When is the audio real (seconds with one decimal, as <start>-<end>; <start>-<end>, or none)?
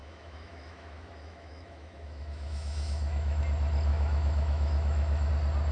3.4-3.9; 5.3-5.7